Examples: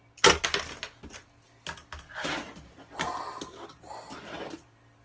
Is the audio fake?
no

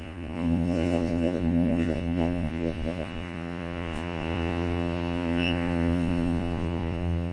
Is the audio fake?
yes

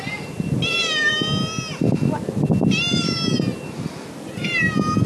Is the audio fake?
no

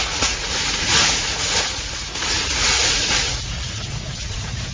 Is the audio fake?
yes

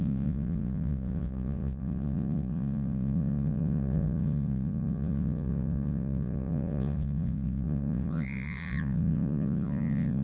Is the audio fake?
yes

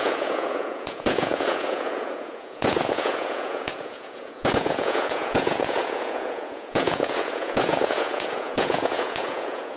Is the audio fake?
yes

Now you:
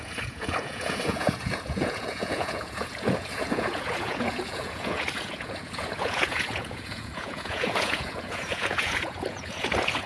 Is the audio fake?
yes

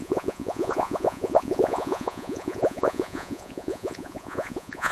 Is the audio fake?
yes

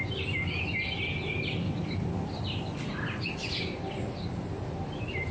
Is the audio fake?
no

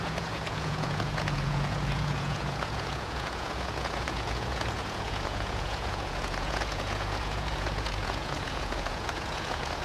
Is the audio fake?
yes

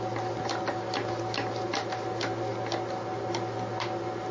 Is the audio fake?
no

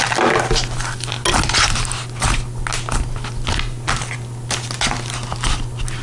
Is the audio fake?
no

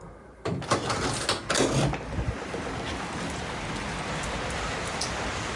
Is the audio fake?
no